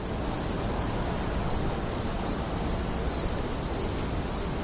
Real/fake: real